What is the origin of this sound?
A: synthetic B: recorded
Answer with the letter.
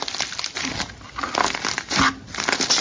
B